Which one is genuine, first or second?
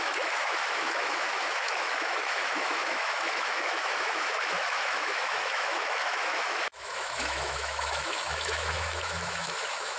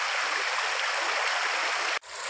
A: second